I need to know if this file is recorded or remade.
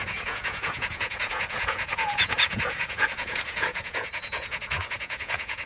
remade